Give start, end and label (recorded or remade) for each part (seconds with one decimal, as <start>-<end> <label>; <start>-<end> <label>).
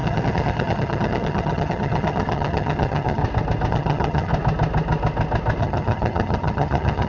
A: 0.0-3.2 remade; 3.2-3.7 recorded; 3.7-4.3 remade; 4.3-5.6 recorded; 5.6-7.1 remade